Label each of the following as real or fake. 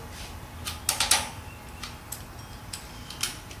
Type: real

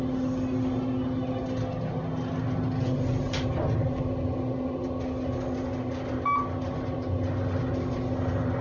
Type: real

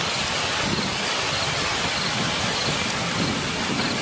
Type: real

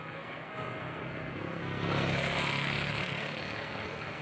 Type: fake